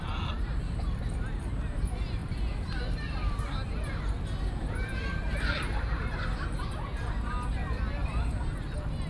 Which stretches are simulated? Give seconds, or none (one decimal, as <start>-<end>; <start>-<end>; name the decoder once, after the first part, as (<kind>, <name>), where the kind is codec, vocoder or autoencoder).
2.2-3.4 (vocoder, BigVGAN v2)